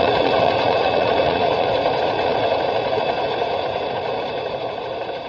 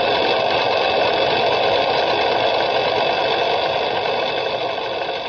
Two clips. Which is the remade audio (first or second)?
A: first